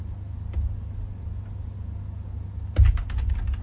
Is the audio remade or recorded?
recorded